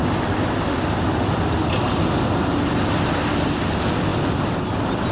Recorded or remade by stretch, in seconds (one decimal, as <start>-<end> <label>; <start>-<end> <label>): 0.0-5.1 recorded